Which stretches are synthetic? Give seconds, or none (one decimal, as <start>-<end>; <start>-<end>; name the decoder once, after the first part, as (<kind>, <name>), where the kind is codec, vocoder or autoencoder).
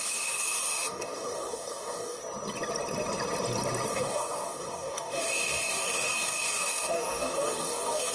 0.0-2.2 (codec, DAC); 3.9-8.1